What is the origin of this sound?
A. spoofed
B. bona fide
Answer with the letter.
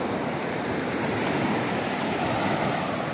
B